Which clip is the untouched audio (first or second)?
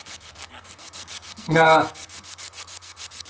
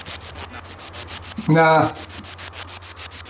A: second